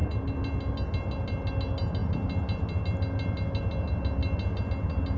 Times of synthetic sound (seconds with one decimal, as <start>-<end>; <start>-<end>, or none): none